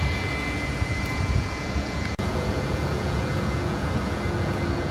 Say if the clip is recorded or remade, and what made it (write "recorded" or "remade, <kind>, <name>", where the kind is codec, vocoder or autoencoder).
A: remade, vocoder, Vocos